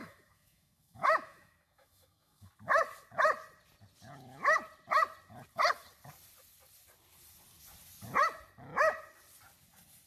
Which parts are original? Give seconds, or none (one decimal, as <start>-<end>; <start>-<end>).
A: 2.5-10.1